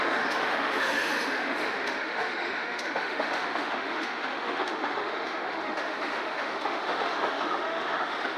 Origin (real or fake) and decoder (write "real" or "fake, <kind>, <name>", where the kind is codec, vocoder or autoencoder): fake, autoencoder, DAC-VAE